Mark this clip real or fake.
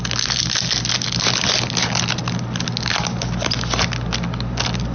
real